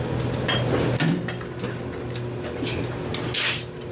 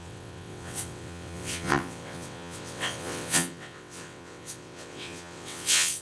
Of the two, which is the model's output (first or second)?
second